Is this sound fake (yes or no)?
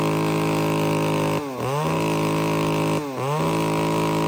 no